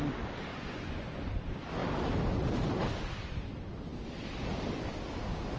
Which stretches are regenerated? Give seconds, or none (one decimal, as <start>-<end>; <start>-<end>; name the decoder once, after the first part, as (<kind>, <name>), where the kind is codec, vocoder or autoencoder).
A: 0.5-1.1 (vocoder, Vocos)